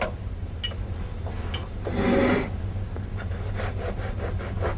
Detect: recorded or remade recorded